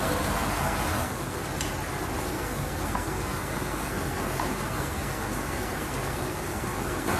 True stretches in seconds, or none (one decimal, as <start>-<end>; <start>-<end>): 1.4-2.2